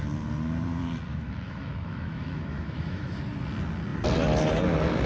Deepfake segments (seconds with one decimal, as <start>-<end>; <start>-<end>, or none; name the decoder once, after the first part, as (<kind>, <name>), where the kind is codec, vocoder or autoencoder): 1.1-3.2 (autoencoder, DAC-VAE)